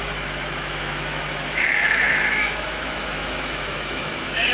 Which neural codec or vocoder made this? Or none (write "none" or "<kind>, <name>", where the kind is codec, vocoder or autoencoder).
autoencoder, DAC-VAE